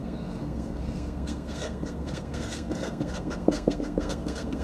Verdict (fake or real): fake